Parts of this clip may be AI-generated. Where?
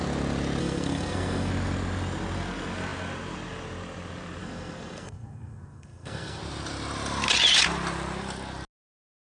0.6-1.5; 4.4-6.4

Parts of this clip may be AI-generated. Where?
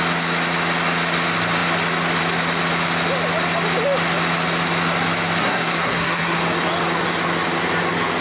5.4-6.4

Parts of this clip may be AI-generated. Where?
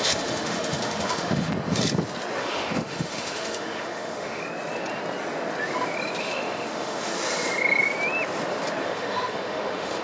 0.0-1.5; 2.4-4.4; 6.2-7.1; 8.8-10.0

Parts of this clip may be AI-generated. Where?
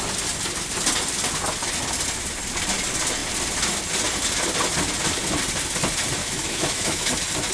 6.2-7.1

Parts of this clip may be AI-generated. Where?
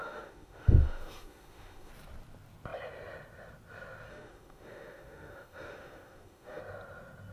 0.0-1.9; 4.1-6.6